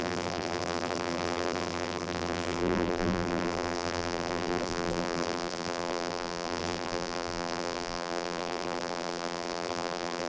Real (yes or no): no